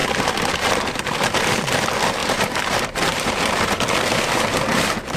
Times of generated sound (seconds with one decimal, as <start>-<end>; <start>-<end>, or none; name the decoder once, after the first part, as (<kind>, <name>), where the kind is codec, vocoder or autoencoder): 2.2-3.5 (vocoder, BigVGAN v2)